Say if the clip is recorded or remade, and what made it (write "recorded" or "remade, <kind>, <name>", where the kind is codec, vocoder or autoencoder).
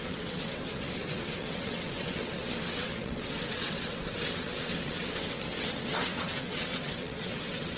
remade, vocoder, WaveNeXt